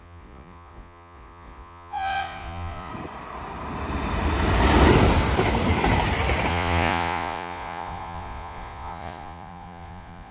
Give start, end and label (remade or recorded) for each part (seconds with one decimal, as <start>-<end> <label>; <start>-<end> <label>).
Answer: 0.0-2.9 remade; 2.9-6.5 recorded; 6.5-10.3 remade

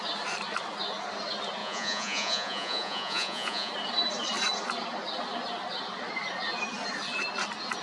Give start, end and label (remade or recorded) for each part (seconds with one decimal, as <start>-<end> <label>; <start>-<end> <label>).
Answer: 0.0-1.6 recorded; 1.6-3.7 remade; 3.7-7.8 recorded

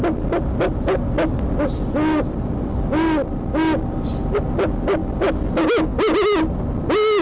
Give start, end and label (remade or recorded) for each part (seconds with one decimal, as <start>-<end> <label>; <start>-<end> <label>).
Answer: 0.0-7.2 recorded

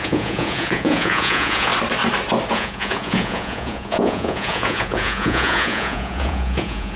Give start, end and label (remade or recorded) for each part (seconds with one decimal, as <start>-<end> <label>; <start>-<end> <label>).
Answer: 0.0-1.7 remade; 1.7-2.5 recorded; 2.5-7.0 remade